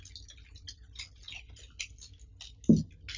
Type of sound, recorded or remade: recorded